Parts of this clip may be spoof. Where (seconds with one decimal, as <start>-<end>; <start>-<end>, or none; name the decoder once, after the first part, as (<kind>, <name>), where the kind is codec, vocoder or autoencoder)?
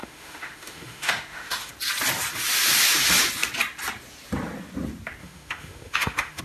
0.0-1.7 (autoencoder, DAC-VAE); 5.2-6.4